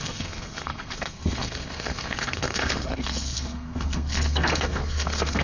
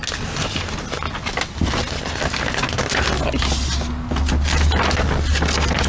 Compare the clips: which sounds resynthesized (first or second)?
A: first